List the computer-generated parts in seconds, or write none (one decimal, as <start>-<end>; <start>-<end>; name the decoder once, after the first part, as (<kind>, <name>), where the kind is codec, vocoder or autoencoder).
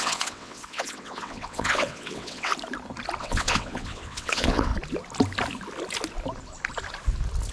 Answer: 0.0-2.5 (vocoder, WaveNeXt); 3.2-4.7